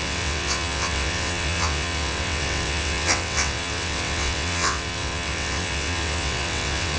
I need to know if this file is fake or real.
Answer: fake